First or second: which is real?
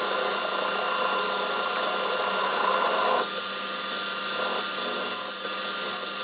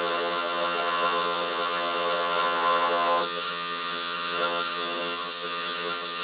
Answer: first